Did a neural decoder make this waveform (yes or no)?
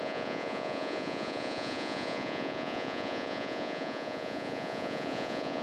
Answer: yes